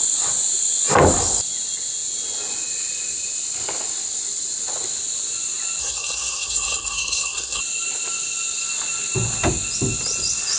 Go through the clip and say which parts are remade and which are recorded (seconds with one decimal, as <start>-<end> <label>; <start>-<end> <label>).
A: 0.0-5.8 recorded; 5.8-7.6 remade; 7.6-10.6 recorded

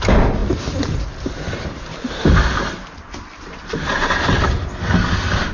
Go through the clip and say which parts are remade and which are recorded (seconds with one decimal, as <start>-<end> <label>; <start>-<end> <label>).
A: 0.0-5.5 recorded

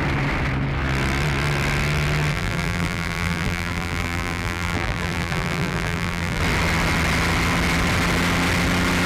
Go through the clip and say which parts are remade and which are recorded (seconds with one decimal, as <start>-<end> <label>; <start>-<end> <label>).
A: 0.0-2.3 recorded; 2.3-6.4 remade; 6.4-9.1 recorded

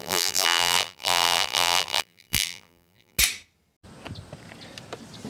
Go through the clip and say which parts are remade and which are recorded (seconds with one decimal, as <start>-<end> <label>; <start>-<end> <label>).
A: 0.0-3.2 remade; 3.2-5.3 recorded